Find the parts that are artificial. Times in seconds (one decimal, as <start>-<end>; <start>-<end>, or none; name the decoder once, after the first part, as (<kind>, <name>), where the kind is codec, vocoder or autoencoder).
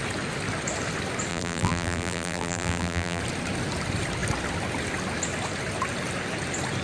1.3-3.2 (vocoder, BigVGAN v2)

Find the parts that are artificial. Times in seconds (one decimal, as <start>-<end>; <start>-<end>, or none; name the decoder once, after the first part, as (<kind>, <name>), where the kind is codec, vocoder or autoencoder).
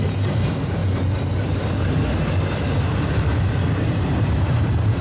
0.0-0.8 (vocoder, BigVGAN v2); 3.8-5.0